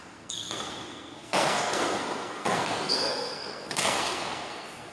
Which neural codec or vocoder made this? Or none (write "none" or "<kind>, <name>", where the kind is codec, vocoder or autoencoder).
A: codec, SNAC